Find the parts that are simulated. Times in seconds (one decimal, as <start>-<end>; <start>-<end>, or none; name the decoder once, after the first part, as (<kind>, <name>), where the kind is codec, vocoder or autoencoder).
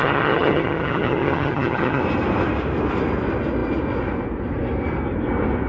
0.0-2.0 (vocoder, HiFi-GAN)